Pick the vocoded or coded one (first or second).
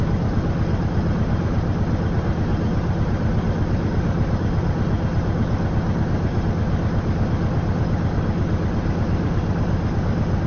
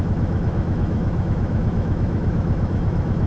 second